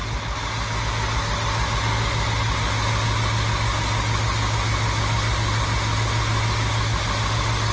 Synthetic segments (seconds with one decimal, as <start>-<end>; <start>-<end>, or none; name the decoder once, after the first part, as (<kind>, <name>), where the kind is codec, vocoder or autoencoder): none